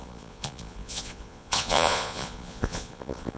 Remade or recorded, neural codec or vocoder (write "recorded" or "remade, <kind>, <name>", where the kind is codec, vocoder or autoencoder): remade, vocoder, Vocos